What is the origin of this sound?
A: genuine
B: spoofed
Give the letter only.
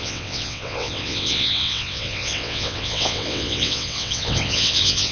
B